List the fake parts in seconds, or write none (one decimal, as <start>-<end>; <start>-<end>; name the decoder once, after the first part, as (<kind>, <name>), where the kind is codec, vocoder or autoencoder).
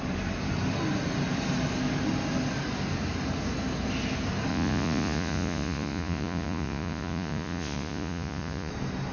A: 4.5-8.7 (vocoder, Vocos)